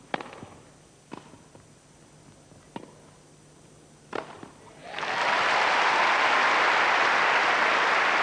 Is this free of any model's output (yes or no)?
yes